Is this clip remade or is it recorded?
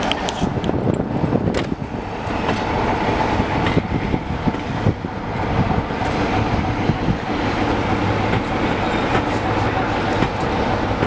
recorded